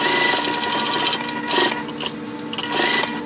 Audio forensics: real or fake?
real